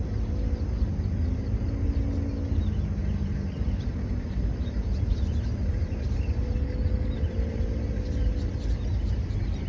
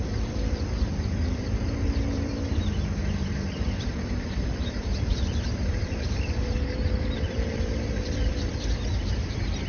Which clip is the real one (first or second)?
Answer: first